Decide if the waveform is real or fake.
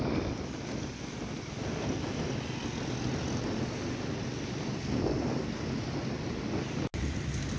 real